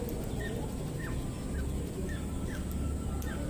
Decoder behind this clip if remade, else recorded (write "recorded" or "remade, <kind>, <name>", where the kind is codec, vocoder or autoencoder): recorded